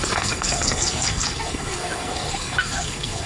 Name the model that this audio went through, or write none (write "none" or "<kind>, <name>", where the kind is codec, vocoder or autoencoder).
codec, SNAC